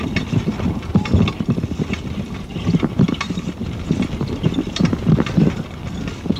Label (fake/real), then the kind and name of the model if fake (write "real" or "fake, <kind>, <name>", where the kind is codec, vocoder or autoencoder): real